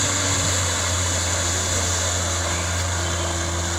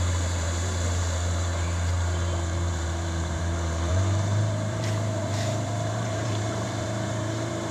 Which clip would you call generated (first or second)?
second